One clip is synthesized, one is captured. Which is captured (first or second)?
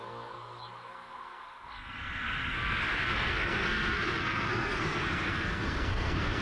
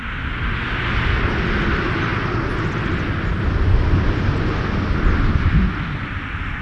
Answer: second